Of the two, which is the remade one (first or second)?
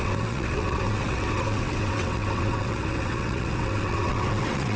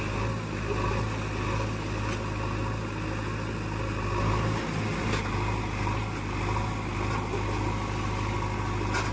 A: first